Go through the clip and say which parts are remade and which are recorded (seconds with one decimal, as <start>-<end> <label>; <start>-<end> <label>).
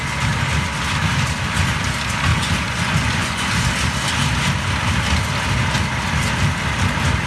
0.0-2.3 recorded; 2.3-3.5 remade; 3.5-7.3 recorded